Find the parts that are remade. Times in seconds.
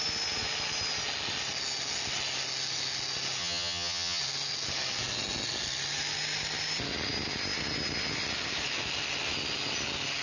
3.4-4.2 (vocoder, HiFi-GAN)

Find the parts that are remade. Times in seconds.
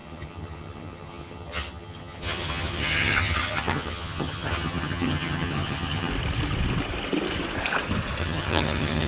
0.0-6.1 (vocoder, HiFi-GAN); 8.2-9.1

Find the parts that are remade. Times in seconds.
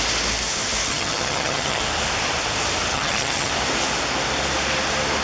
0.9-1.8 (vocoder, HiFi-GAN); 2.9-3.5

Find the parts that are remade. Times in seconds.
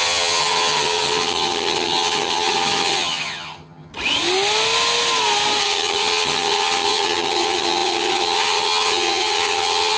0.0-3.9 (vocoder, HiFi-GAN); 5.6-10.0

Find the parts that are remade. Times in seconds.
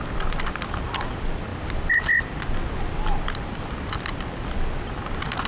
none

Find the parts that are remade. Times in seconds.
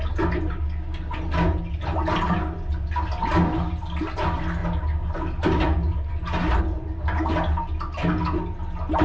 none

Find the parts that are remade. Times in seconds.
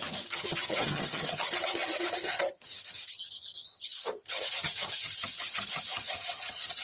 0.0-6.8 (vocoder, HiFi-GAN)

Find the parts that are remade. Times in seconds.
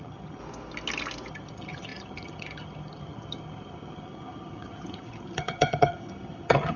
0.0-0.4 (vocoder, HiFi-GAN); 1.3-6.8